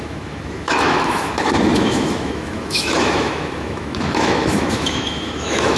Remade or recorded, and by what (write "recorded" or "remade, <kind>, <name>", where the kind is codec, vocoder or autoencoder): remade, autoencoder, DAC-VAE